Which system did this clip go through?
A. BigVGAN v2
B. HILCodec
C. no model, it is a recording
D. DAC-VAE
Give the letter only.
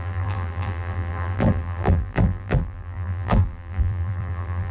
A